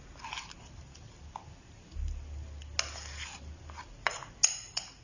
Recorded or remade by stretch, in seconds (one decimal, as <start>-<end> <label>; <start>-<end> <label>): 0.0-5.0 recorded